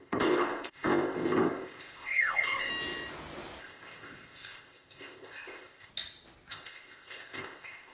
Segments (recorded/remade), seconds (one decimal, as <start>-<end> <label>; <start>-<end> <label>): 0.0-2.7 remade; 2.7-3.6 recorded; 3.6-5.9 remade; 5.9-6.5 recorded; 6.5-7.9 remade